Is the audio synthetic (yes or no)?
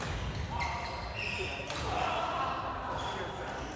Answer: no